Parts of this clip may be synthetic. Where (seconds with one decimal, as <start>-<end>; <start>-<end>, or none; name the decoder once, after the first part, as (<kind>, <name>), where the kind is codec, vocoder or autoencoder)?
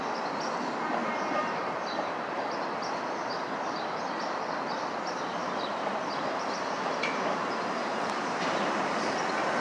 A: 1.0-2.4 (vocoder, BigVGAN v2); 5.4-8.7